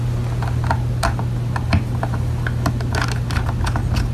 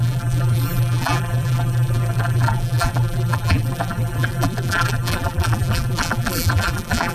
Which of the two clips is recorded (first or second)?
first